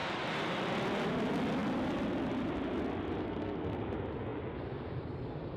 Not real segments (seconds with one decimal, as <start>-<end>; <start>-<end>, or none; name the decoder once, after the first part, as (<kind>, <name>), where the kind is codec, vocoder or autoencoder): 3.2-3.8 (codec, SNAC)